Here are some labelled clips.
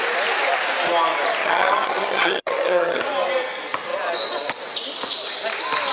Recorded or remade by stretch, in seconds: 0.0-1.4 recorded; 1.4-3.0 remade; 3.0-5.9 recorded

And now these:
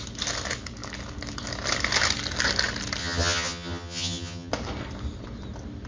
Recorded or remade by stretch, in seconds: 0.0-3.0 recorded; 3.0-4.5 remade; 4.5-5.9 recorded

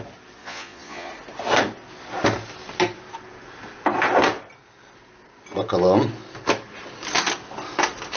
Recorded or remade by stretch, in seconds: 0.0-0.4 recorded; 0.4-1.1 remade; 1.1-8.2 recorded

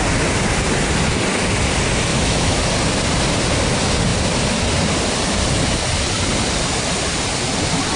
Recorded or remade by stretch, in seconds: 0.0-2.1 recorded; 2.1-2.6 remade; 2.6-8.0 recorded

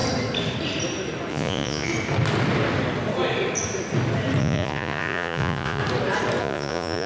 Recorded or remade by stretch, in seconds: 0.0-1.3 recorded; 1.3-1.9 remade; 1.9-4.4 recorded; 4.4-5.8 remade; 5.8-6.4 recorded; 6.4-7.1 remade

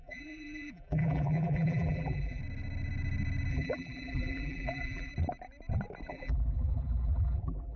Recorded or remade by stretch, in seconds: 0.0-2.4 remade; 2.4-3.5 recorded; 3.5-5.1 remade; 5.1-6.1 recorded; 6.1-7.8 remade

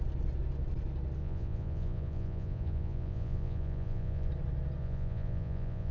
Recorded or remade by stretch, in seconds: 0.0-1.2 recorded; 1.2-4.3 remade; 4.3-4.8 recorded; 4.8-5.9 remade